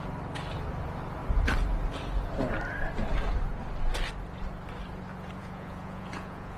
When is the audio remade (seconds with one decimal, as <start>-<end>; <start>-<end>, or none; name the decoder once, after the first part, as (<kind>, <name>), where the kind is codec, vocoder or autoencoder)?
5.4-6.6 (vocoder, Vocos)